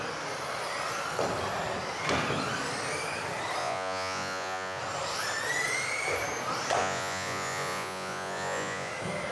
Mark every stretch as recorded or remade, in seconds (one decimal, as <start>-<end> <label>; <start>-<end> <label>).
0.0-3.6 recorded; 3.6-4.8 remade; 4.8-6.8 recorded; 6.8-8.9 remade; 8.9-9.3 recorded